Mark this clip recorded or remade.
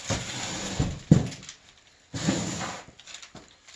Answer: recorded